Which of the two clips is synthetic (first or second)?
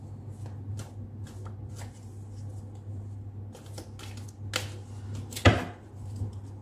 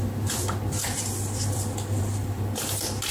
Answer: second